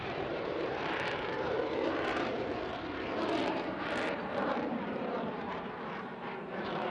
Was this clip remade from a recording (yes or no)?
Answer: yes